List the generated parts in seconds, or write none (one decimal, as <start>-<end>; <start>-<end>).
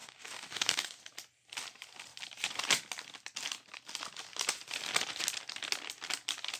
0.0-1.0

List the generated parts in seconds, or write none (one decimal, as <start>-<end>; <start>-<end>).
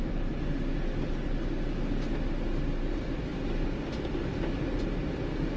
none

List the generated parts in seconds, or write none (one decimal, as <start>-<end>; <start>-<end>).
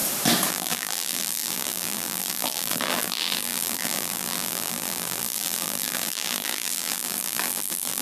0.5-8.0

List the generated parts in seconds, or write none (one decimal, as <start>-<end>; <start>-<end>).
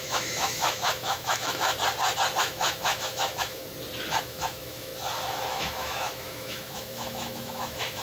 0.0-1.7; 2.4-3.6; 4.2-4.9; 5.5-8.0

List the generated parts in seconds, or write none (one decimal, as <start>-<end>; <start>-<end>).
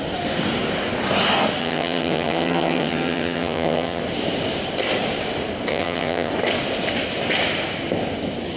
1.6-4.0; 5.7-6.3